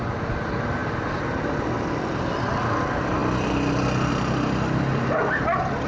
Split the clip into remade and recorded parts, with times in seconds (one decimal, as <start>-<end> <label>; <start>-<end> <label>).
0.0-5.9 recorded